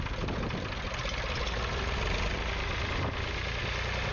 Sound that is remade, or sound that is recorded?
recorded